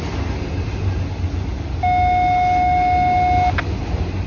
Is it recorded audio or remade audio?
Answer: recorded